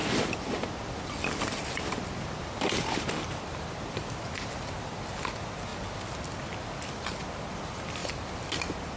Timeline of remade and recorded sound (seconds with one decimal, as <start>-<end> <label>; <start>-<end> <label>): 0.0-9.0 recorded